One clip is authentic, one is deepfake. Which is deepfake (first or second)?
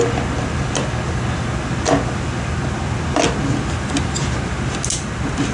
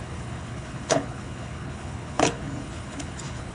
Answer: second